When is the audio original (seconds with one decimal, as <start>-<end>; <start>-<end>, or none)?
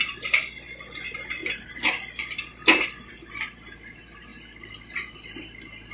0.0-5.9